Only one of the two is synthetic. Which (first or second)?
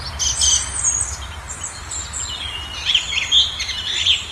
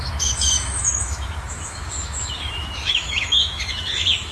second